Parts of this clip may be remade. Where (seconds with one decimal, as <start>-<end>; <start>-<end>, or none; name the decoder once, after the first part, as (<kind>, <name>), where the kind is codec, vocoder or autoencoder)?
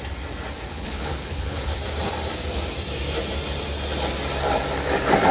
0.7-1.8 (codec, HILCodec)